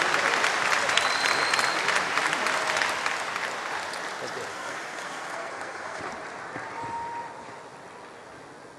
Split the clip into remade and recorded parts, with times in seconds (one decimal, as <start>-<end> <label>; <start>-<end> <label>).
0.0-4.5 recorded; 4.5-6.0 remade; 6.0-8.8 recorded